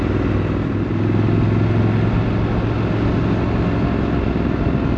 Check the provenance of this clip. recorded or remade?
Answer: recorded